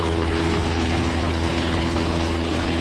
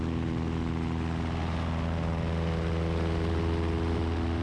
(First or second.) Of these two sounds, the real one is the second